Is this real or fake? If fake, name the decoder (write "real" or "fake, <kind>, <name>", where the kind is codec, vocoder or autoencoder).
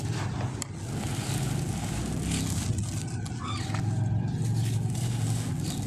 real